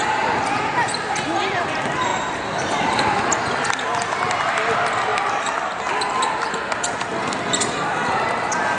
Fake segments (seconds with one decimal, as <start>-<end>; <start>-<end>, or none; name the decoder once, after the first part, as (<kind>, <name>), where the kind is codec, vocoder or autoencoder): none